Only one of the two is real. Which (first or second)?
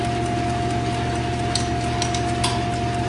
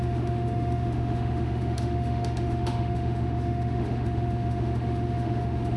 first